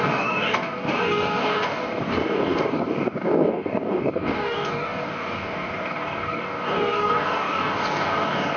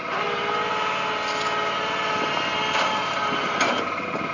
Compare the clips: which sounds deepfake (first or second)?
first